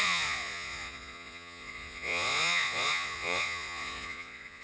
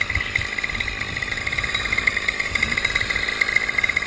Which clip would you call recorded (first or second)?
second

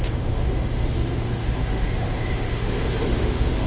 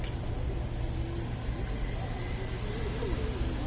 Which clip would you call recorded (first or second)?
second